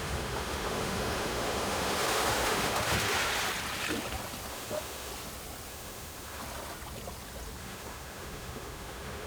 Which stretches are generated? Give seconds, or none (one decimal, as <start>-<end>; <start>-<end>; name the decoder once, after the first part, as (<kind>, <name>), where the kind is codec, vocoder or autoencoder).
0.0-3.3 (autoencoder, DAC-VAE); 4.5-5.1; 5.7-6.4; 7.6-9.3

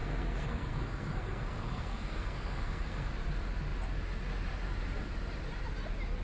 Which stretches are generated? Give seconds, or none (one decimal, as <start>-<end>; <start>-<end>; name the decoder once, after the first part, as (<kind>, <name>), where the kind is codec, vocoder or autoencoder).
0.0-3.1 (codec, SNAC)

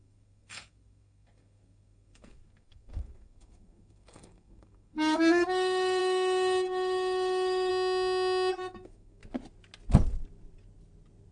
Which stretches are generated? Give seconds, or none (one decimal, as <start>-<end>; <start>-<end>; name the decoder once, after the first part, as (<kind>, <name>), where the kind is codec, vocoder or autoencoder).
0.0-7.7 (codec, SNAC); 8.5-9.2

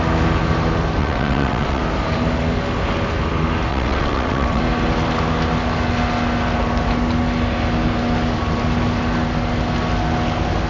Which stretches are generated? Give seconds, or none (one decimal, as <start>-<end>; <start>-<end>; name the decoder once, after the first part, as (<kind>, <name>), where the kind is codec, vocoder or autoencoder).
1.0-1.8 (vocoder, WaveNeXt); 3.7-4.6

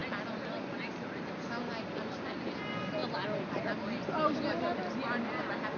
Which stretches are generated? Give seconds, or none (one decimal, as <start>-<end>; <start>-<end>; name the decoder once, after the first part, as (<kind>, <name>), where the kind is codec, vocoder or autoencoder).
none

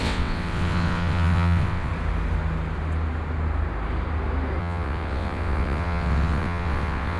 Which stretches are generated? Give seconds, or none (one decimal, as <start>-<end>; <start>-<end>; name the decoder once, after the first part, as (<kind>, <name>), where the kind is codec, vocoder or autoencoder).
0.0-1.9 (vocoder, WaveNeXt); 4.6-7.2